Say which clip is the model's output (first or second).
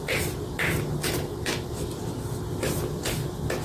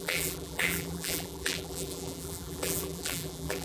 second